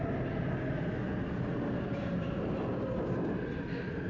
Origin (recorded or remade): recorded